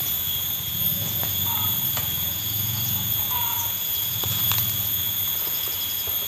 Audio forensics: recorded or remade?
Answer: remade